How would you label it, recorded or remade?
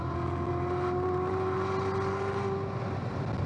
recorded